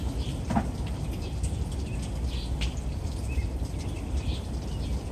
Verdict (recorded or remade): recorded